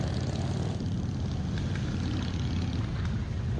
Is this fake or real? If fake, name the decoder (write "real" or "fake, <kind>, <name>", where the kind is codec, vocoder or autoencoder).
real